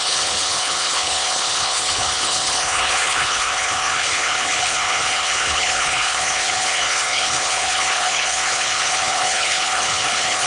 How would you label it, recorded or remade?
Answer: remade